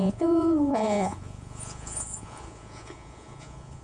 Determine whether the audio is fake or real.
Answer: fake